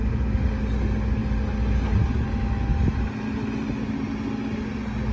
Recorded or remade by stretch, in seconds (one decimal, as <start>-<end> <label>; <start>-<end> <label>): 0.0-5.1 recorded